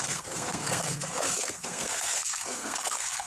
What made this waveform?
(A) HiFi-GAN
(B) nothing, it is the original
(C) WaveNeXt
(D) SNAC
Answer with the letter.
D